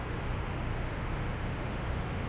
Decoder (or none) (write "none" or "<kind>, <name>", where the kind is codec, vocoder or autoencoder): autoencoder, DAC-VAE